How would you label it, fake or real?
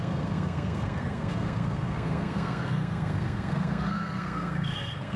fake